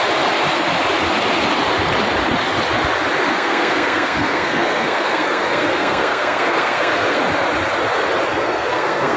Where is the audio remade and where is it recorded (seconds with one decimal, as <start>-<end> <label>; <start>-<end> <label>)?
0.0-3.3 recorded; 3.3-7.2 remade; 7.2-8.3 recorded; 8.3-9.2 remade